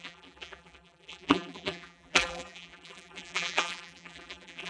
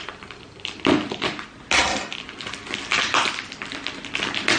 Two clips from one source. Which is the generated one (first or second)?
first